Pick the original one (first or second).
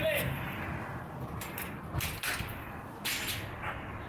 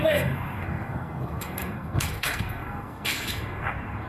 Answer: first